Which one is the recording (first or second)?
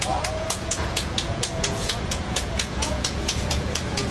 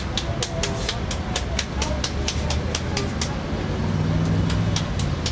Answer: second